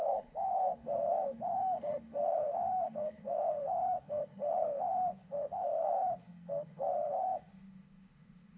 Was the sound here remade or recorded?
remade